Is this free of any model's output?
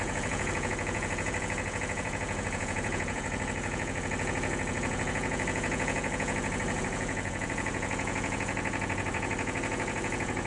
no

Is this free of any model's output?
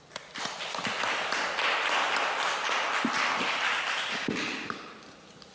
yes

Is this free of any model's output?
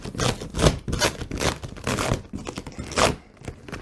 yes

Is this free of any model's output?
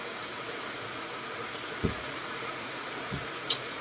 no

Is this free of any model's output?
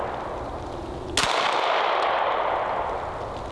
yes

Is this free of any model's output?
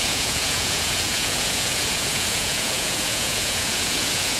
no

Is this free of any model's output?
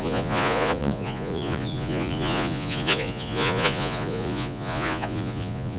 no